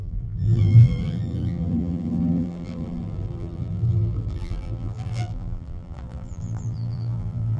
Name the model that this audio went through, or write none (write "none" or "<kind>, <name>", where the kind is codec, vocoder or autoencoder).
vocoder, BigVGAN v2